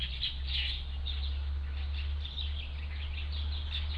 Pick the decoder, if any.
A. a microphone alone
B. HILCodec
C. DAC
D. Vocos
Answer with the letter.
A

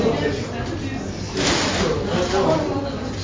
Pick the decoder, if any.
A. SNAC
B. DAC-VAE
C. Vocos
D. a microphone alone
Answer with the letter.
D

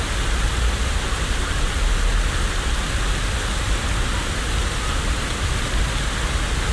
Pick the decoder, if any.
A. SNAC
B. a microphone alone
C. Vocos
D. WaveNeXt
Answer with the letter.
B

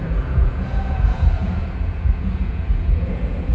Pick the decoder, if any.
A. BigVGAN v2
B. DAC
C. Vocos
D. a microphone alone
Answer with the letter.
C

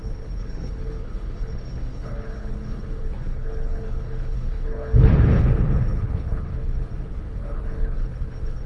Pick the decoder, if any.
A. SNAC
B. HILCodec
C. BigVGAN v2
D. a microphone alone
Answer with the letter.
B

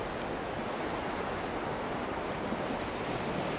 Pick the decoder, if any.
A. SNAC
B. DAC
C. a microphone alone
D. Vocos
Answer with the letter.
C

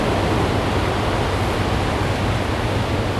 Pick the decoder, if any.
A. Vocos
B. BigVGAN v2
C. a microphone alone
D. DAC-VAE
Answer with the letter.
C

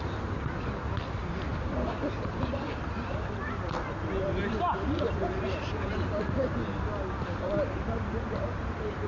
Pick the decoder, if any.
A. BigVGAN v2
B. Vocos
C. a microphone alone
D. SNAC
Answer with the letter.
C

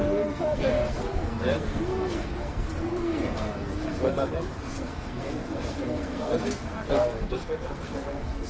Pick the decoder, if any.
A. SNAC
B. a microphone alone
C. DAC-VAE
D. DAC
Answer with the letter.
A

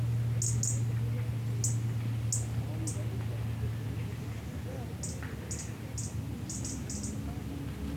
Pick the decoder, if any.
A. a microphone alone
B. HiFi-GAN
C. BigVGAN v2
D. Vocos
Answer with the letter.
A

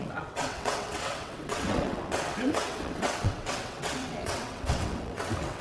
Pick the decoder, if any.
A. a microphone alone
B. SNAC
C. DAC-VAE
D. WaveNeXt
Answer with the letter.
D